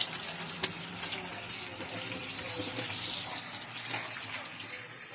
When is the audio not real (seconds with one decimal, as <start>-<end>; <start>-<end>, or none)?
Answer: none